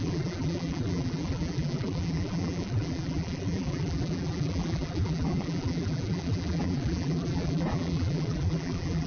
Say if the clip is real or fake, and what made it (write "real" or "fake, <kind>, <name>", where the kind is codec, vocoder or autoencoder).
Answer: fake, vocoder, BigVGAN v2